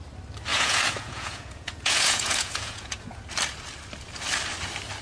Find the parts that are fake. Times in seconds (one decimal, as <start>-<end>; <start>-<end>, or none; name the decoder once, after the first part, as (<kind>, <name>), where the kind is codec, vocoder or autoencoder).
0.5-3.2 (vocoder, Vocos)